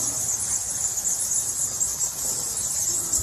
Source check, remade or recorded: recorded